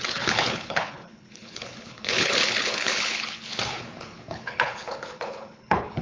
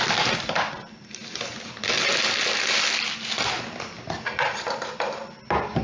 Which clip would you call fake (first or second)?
first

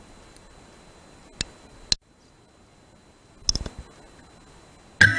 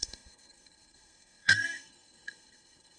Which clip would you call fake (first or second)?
second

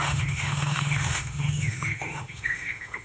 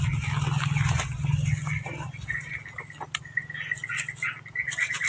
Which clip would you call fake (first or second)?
first